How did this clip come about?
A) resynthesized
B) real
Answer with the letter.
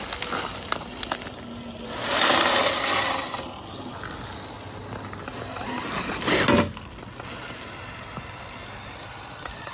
B